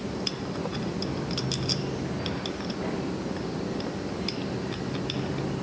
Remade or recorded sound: recorded